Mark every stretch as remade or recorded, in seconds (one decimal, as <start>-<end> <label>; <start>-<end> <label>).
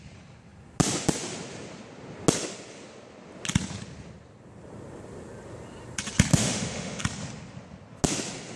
0.0-6.3 recorded; 6.3-7.0 remade; 7.0-8.6 recorded